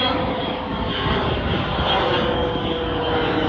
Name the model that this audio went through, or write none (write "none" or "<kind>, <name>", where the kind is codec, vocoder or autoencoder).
codec, DAC